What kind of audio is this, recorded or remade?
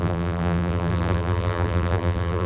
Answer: remade